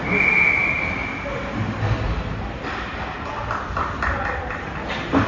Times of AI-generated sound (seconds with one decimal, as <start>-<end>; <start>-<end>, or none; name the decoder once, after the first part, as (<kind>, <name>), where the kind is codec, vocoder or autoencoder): none